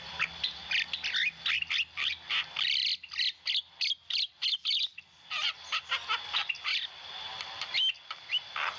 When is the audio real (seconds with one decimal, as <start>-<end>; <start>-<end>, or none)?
0.0-6.7; 7.3-8.8